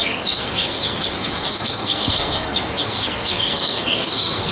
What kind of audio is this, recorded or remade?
remade